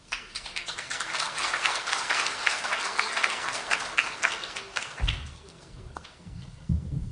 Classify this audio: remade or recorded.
remade